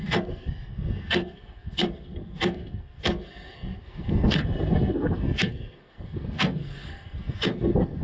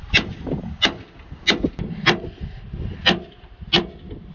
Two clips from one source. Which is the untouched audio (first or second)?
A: second